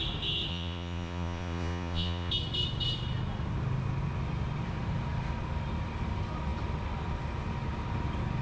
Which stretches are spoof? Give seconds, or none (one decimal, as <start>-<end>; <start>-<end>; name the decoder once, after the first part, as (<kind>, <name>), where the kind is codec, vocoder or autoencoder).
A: 0.5-2.3 (vocoder, Vocos)